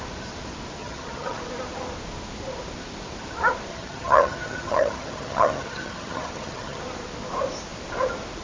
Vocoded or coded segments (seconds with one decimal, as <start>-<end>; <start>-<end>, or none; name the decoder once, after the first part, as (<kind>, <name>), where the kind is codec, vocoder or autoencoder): 0.8-1.4 (vocoder, HiFi-GAN); 3.7-6.8